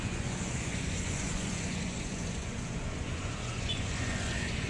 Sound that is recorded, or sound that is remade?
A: remade